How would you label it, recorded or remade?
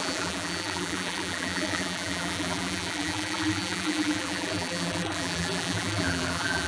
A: remade